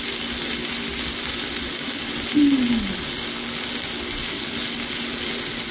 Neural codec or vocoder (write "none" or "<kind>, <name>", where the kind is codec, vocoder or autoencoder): none